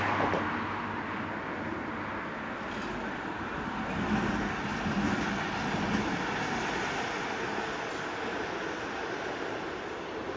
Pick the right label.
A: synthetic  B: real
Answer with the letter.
B